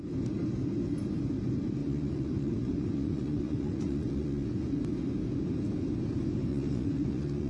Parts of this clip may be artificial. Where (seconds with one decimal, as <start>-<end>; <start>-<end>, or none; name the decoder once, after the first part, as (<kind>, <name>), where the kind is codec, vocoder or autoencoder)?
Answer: 1.8-4.8 (vocoder, Vocos); 6.5-7.5